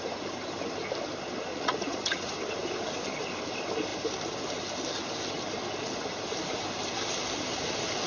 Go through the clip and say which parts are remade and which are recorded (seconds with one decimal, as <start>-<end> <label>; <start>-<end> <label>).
0.0-1.5 recorded; 1.5-2.3 remade; 2.3-8.1 recorded